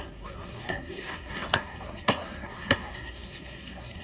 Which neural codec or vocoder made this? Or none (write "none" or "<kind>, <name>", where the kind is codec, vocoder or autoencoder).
codec, SNAC